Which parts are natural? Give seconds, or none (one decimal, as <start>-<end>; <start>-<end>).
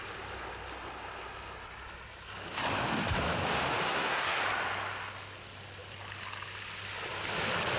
0.0-3.9; 4.4-7.8